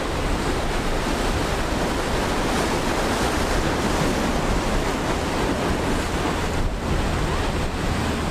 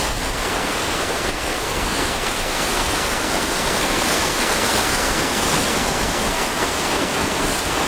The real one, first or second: first